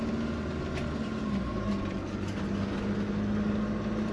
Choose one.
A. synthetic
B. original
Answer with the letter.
B